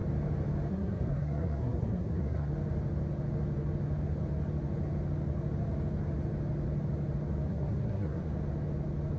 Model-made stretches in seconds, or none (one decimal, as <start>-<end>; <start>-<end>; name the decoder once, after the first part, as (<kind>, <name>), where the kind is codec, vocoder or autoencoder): 0.7-2.5 (codec, SNAC); 7.5-8.3